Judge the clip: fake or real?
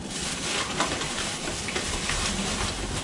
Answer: real